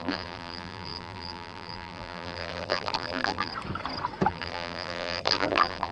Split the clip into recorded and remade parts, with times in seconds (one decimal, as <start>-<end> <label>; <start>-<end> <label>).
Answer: 0.0-3.5 remade; 3.5-4.3 recorded; 4.3-5.9 remade